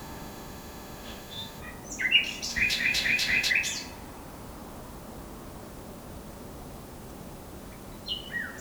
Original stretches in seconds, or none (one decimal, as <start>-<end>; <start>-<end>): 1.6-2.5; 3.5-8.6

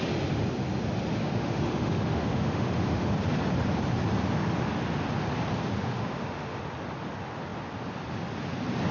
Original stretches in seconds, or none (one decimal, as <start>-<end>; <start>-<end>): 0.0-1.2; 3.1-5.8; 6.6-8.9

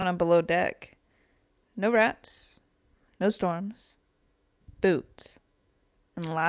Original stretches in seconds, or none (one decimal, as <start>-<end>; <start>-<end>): 1.1-3.3; 5.9-6.5

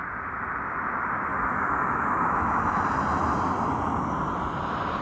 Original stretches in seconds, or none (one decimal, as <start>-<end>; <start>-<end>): 0.0-1.3; 2.8-5.0